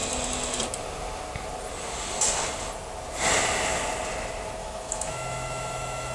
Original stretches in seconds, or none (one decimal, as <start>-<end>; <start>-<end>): 0.0-4.6